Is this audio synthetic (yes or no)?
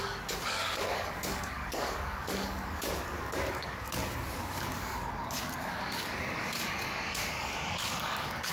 yes